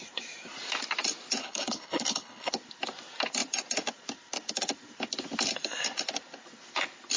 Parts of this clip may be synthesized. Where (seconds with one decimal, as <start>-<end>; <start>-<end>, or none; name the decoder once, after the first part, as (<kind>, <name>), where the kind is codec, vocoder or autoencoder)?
1.4-2.5 (codec, HILCodec)